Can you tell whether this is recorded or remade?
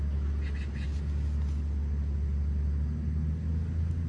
recorded